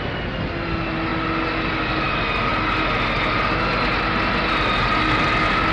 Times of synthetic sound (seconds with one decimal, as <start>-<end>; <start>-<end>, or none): none